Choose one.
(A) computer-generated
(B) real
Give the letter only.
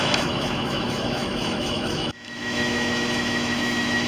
A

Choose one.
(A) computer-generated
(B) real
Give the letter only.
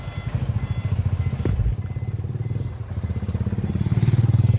B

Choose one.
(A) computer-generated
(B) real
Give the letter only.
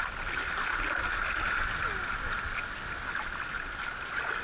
B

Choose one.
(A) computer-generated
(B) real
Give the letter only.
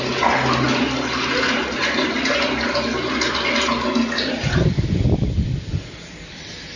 B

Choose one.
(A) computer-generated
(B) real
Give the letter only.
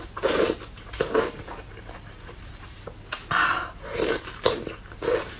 A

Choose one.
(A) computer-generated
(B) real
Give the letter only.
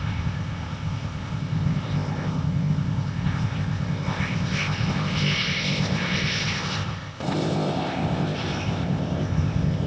A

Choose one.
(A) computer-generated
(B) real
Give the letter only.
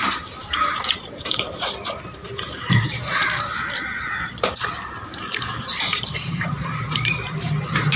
A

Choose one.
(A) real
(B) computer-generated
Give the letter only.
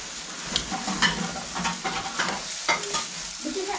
A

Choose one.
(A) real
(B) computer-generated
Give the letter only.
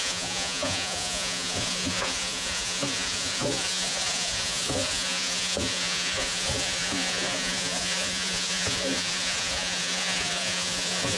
B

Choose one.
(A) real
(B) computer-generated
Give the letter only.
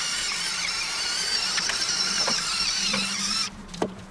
B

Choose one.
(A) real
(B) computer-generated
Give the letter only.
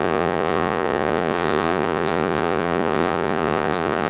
B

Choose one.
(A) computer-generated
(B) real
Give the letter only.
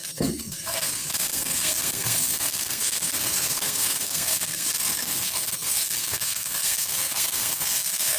A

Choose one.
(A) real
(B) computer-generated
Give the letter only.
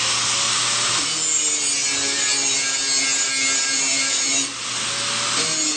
A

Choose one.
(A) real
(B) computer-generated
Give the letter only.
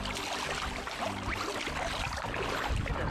A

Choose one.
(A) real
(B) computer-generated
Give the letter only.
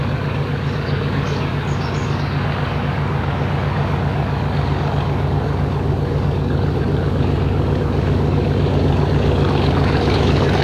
B